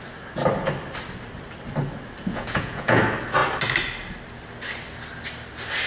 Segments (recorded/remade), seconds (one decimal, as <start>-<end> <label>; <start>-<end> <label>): 0.0-2.3 recorded; 2.3-3.0 remade; 3.0-5.9 recorded